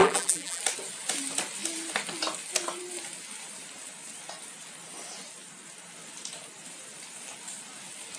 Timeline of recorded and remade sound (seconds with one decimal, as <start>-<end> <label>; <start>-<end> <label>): 0.0-0.6 remade; 0.6-8.2 recorded

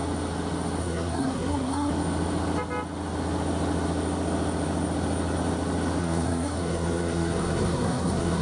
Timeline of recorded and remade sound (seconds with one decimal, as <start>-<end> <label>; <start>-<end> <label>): 0.0-0.8 recorded; 0.8-1.9 remade; 1.9-6.0 recorded; 6.0-8.4 remade

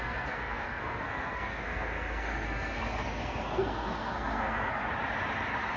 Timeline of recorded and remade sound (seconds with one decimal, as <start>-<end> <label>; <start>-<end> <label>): 0.0-4.8 remade; 4.8-5.8 recorded

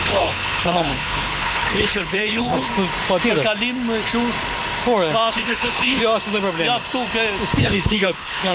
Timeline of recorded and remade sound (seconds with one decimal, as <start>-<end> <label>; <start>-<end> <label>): 0.0-2.7 remade; 2.7-5.3 recorded; 5.3-6.0 remade; 6.0-7.6 recorded; 7.6-8.5 remade

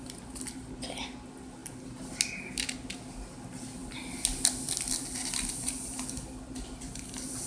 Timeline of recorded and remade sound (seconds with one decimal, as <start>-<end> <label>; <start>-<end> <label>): 0.0-1.6 recorded; 1.6-2.1 remade; 2.1-7.5 recorded